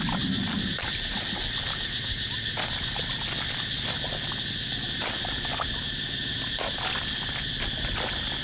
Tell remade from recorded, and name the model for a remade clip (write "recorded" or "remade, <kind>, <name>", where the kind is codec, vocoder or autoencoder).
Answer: recorded